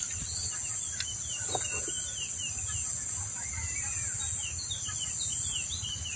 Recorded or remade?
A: recorded